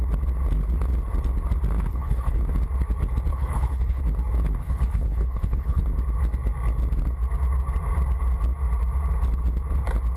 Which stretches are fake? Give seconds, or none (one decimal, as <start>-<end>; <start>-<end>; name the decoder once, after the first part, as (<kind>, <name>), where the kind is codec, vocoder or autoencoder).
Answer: 1.9-2.4 (codec, HILCodec); 3.3-4.0; 4.6-5.8